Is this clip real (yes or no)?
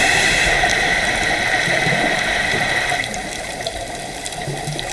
no